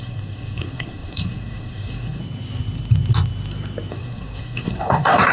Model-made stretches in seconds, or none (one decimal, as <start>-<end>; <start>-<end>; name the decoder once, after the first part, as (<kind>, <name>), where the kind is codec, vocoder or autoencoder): 0.0-2.2 (codec, SNAC); 3.9-5.3

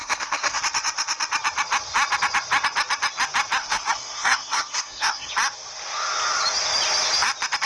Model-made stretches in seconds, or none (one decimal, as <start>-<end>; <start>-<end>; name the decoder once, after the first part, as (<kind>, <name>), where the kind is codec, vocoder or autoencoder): 0.0-0.6 (codec, SNAC); 3.6-5.3

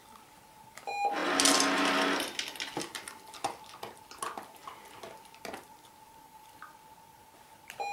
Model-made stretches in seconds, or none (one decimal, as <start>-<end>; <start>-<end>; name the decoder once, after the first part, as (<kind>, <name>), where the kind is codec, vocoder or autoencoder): none

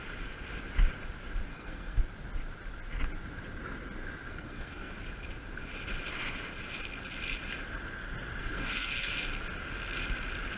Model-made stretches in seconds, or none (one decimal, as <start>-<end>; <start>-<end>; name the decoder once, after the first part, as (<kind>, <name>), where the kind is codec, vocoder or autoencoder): 1.5-2.0 (codec, SNAC); 4.3-4.9; 8.4-9.1

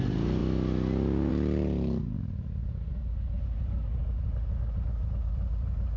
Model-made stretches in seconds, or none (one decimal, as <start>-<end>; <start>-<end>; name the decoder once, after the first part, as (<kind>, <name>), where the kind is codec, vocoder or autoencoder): none

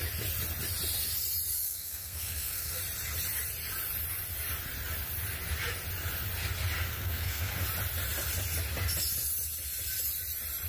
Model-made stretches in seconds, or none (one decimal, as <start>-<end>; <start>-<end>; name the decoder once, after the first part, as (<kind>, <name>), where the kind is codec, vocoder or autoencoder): 1.5-2.8 (codec, SNAC); 6.9-7.5